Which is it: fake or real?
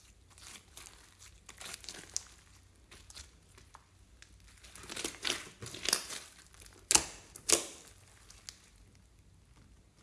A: real